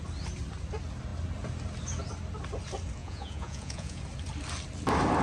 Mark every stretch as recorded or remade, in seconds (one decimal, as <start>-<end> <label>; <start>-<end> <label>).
0.0-3.0 recorded; 3.0-4.0 remade; 4.0-5.2 recorded